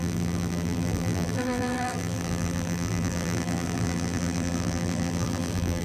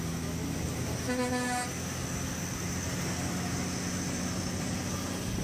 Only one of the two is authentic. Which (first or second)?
second